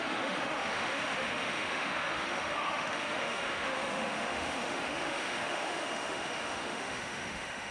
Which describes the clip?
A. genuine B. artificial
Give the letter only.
B